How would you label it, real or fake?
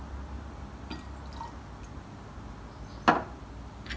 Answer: real